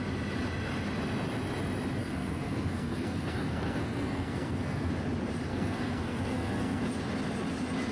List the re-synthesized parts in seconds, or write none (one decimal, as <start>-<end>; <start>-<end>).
2.0-4.9; 5.5-6.8